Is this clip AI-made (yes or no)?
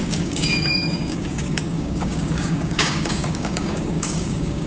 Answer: yes